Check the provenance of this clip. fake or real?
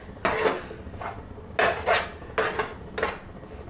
real